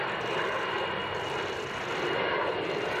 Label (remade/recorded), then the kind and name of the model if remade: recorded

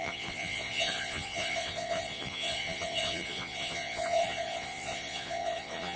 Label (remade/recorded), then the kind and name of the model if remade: remade, vocoder, Vocos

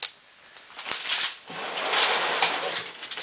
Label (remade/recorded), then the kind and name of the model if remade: recorded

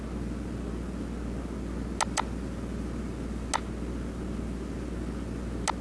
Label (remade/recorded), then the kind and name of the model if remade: recorded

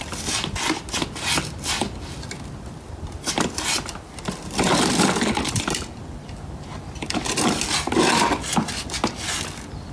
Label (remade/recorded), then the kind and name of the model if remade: recorded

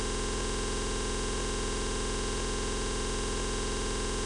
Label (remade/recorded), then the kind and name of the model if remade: remade, vocoder, Vocos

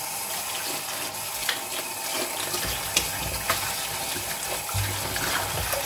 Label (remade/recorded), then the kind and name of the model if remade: recorded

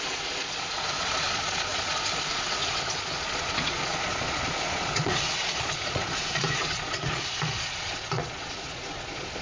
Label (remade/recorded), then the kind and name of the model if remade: remade, vocoder, Vocos